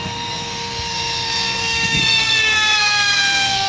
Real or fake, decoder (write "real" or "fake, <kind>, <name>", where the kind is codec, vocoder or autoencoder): fake, codec, SNAC